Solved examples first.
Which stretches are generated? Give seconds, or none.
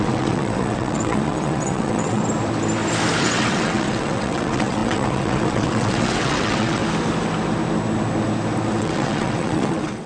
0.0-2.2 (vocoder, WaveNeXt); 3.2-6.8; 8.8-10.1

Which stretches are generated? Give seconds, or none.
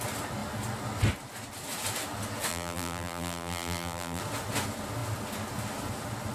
2.5-4.2 (vocoder, BigVGAN v2)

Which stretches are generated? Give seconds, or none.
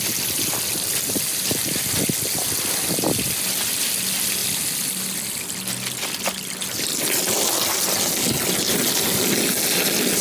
none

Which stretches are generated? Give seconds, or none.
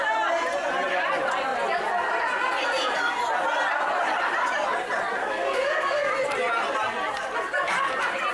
5.2-6.1 (codec, SNAC)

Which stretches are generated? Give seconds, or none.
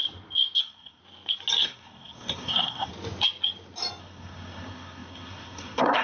0.6-1.0 (codec, SNAC); 1.6-2.9; 4.0-6.0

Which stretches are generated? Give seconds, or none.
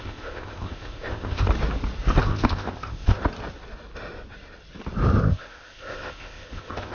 0.0-1.5 (codec, ZipCodec); 2.2-3.2; 5.2-6.9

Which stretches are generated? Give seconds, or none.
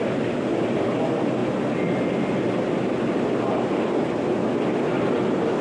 none